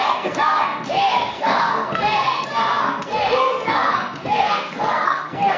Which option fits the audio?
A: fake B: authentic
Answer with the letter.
A